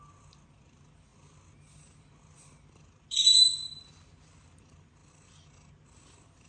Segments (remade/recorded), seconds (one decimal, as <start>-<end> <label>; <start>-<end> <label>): 0.0-6.5 recorded